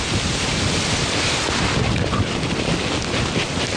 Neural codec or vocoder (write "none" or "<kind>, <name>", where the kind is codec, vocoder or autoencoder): none